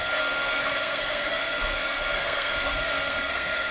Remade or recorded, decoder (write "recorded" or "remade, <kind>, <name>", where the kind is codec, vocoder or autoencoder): remade, codec, SNAC